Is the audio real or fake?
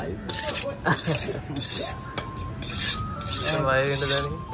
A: real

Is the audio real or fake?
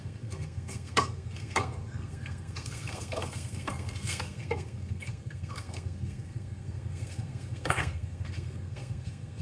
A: fake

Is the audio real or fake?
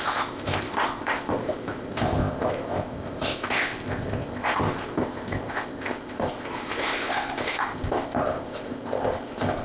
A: fake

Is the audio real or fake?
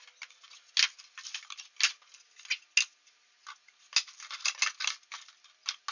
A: real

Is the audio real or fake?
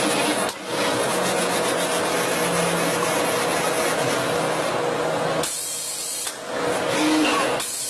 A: real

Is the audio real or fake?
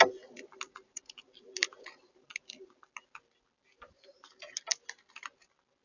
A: real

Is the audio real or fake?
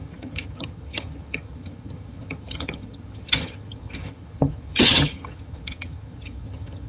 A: fake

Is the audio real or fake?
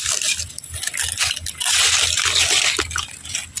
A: real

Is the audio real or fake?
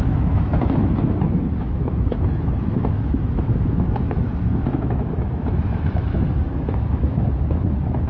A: fake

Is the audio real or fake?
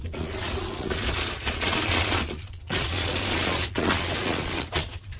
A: fake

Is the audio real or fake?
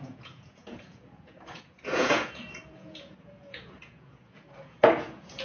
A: fake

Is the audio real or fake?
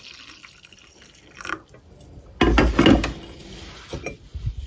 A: real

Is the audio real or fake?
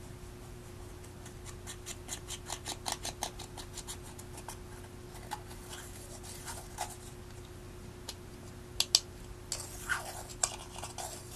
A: real